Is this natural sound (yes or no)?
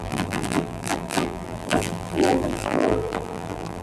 no